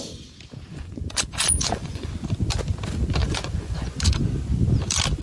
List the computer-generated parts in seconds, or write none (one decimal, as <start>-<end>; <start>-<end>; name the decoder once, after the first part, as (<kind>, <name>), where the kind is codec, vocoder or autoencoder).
0.7-2.1 (vocoder, Vocos); 3.2-4.0